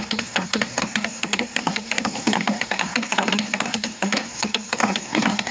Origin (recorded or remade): remade